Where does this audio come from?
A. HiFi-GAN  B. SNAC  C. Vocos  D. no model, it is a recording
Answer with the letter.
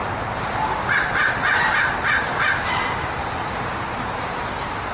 D